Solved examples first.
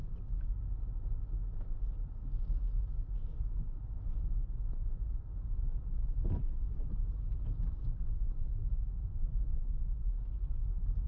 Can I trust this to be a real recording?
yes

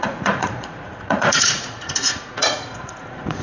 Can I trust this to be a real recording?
no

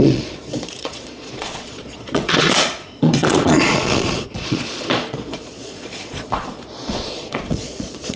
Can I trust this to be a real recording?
no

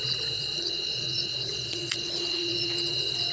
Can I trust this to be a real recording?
no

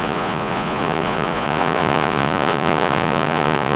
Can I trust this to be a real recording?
no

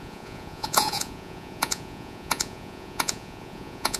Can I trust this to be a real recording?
no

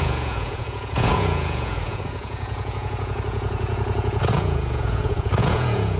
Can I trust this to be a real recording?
no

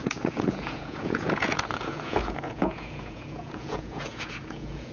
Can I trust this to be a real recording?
no